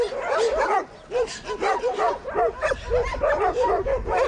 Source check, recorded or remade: recorded